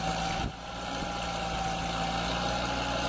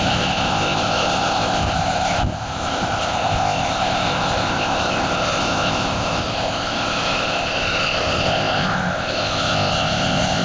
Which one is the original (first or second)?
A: first